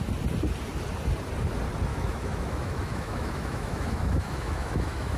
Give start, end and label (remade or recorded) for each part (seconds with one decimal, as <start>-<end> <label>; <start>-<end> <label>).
0.0-1.9 recorded; 1.9-5.2 remade